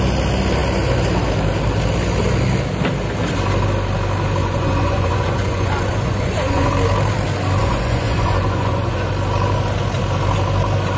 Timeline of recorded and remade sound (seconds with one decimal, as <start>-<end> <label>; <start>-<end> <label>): 0.0-4.4 recorded; 4.4-6.7 remade; 6.7-7.6 recorded; 7.6-9.1 remade; 9.1-11.0 recorded